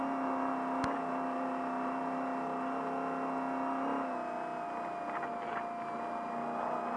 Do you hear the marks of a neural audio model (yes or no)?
no